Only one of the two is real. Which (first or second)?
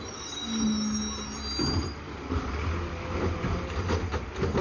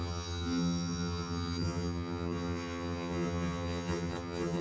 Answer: first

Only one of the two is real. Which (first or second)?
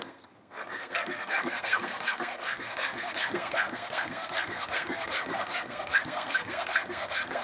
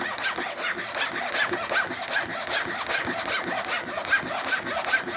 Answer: second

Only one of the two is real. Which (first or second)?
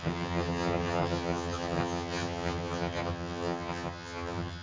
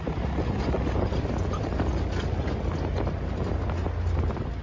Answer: second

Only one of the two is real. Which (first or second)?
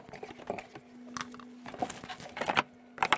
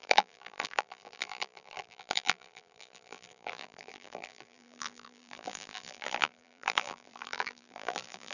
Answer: first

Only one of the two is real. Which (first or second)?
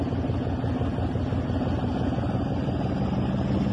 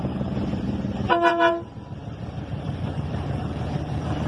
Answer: first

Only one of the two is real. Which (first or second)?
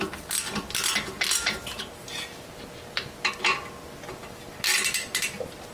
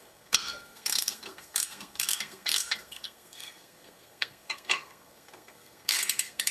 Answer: first